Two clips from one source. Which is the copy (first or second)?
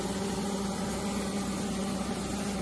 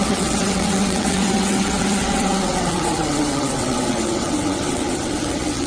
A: second